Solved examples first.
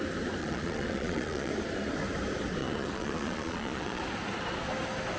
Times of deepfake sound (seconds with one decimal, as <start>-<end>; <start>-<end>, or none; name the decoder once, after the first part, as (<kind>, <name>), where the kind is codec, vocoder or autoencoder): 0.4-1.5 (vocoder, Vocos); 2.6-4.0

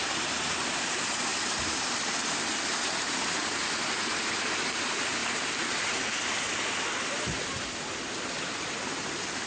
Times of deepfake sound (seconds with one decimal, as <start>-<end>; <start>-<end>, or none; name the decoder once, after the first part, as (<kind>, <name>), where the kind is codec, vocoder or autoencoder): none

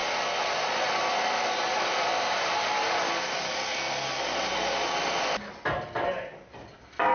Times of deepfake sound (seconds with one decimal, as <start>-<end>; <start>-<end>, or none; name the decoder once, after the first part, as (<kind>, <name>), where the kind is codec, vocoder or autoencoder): none